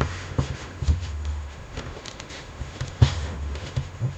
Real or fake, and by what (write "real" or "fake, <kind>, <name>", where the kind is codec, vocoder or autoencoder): fake, autoencoder, DAC-VAE